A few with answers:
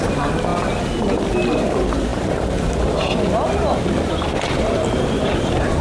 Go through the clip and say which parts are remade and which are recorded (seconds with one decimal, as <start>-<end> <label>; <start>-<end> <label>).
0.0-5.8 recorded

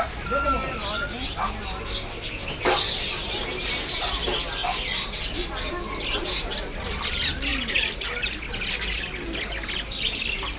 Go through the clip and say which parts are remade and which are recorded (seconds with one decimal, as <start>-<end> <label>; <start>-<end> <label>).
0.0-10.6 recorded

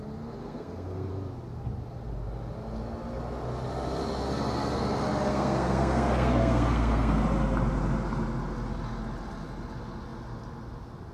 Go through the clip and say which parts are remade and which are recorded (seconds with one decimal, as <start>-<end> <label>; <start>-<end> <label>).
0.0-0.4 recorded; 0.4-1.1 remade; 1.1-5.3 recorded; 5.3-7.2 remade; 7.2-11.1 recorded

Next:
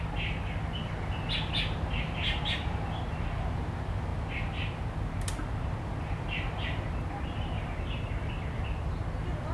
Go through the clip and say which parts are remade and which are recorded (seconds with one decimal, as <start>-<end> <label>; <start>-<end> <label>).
0.0-9.5 recorded

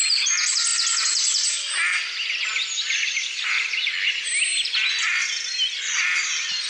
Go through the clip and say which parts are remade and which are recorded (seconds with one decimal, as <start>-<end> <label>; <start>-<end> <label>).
0.0-6.7 recorded

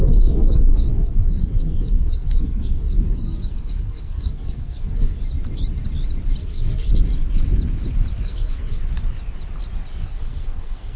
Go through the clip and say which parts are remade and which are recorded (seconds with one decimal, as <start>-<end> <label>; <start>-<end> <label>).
0.0-5.2 remade; 5.2-6.4 recorded; 6.4-6.9 remade; 6.9-8.2 recorded; 8.2-8.8 remade; 8.8-9.9 recorded; 9.9-11.0 remade

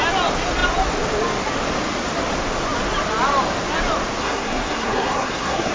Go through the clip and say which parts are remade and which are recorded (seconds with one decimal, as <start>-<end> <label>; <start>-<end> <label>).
0.0-4.2 recorded; 4.2-5.7 remade